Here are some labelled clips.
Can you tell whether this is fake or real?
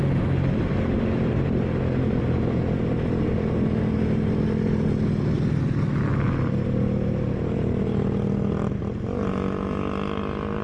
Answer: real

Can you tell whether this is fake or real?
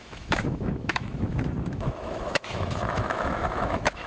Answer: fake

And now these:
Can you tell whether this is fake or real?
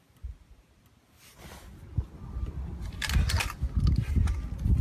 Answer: real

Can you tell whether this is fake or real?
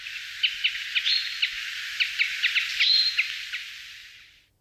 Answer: real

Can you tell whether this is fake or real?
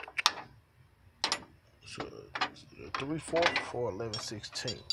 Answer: real